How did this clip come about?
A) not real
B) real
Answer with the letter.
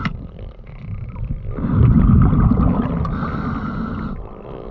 B